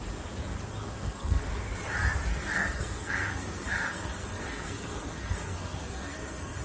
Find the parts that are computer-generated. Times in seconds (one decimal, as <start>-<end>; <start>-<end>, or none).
0.8-1.5; 2.3-6.6